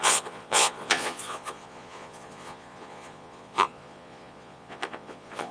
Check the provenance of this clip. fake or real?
fake